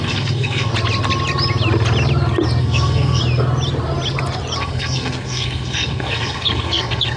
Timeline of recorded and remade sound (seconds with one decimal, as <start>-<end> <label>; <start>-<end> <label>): 0.0-0.7 remade; 0.7-2.6 recorded; 2.6-3.2 remade; 3.2-4.6 recorded; 4.6-7.2 remade